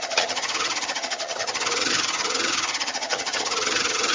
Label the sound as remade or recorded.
remade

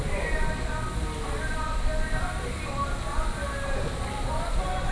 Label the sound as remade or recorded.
recorded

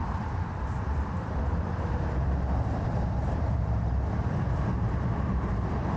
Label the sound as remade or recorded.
remade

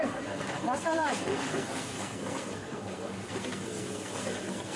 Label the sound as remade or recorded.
remade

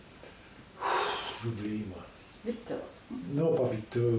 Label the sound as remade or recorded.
recorded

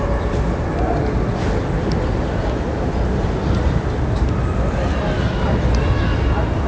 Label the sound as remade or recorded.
recorded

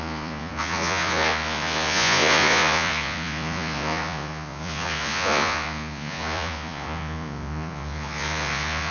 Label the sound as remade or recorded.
remade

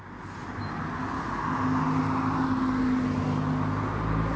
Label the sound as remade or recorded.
recorded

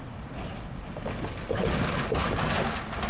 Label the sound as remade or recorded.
recorded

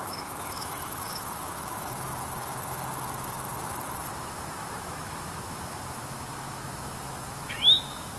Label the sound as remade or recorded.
remade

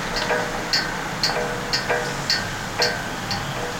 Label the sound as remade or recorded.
recorded